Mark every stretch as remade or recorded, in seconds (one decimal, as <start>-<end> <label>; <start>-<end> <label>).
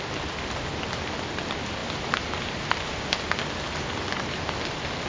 0.0-5.1 recorded